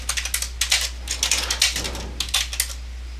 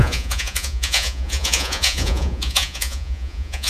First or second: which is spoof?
second